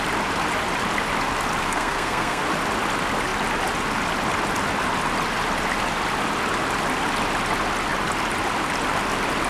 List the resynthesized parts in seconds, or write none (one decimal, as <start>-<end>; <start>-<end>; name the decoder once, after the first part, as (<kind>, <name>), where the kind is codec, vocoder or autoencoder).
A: 1.6-2.4 (codec, SNAC)